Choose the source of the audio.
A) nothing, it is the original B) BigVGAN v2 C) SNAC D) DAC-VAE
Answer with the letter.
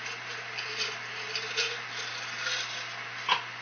A